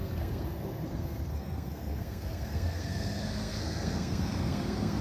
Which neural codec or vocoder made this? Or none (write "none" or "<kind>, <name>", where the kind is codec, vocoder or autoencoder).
codec, SNAC